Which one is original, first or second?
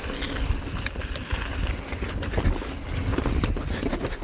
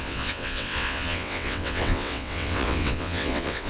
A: first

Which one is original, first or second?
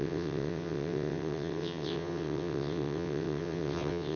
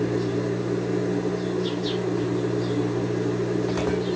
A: second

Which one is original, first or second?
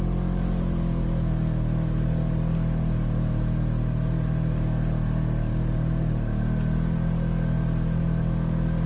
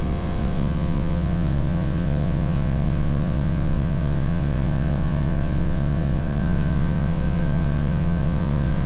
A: first